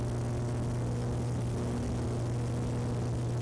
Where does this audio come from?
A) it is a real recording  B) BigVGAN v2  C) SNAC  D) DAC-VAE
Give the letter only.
A